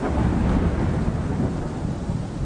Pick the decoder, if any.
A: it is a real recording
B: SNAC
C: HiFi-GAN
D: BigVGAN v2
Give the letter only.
A